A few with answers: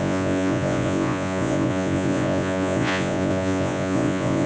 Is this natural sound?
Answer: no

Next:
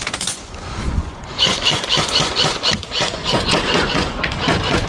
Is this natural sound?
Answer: no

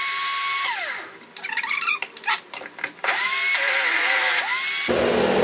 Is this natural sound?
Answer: yes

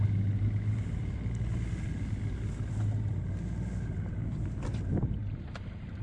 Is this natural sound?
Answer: yes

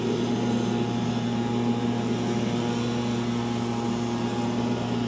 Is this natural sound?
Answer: yes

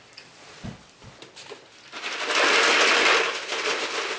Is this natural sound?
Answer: yes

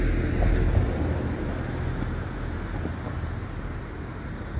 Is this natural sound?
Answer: yes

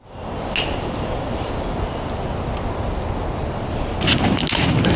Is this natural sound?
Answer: yes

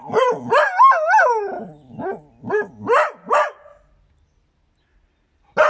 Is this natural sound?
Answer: yes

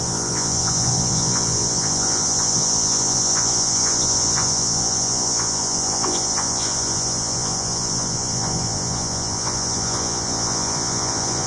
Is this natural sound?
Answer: no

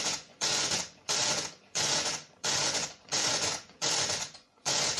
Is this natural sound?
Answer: no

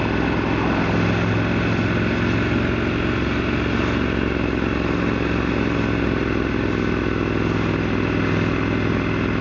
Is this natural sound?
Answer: yes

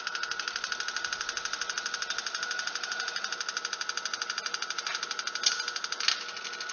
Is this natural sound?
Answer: yes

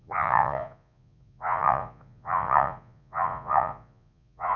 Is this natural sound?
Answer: no